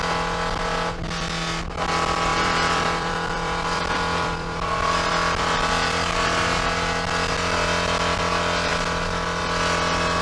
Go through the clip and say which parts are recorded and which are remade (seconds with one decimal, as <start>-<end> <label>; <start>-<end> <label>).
0.0-2.3 recorded; 2.3-5.7 remade; 5.7-10.2 recorded